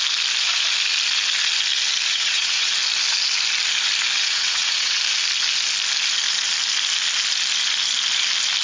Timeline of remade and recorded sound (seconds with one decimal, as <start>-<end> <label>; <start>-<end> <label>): 0.0-2.1 recorded; 2.1-2.7 remade; 2.7-4.2 recorded; 4.2-5.0 remade; 5.0-8.6 recorded